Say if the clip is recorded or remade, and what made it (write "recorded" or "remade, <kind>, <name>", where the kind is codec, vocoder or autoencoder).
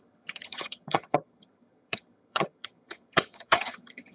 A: remade, vocoder, HiFi-GAN